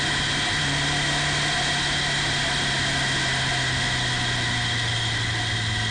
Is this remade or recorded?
recorded